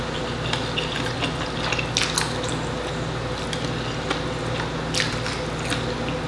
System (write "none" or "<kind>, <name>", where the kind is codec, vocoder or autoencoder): none